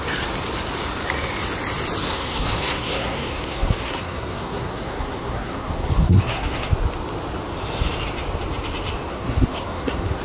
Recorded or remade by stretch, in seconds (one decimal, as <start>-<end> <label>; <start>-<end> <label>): 0.0-2.0 recorded; 2.0-6.7 remade; 6.7-9.1 recorded; 9.1-10.2 remade